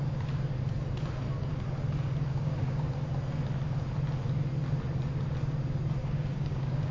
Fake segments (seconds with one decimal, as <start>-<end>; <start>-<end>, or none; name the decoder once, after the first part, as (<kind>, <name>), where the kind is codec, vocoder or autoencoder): 2.3-2.9 (codec, DAC); 6.0-6.9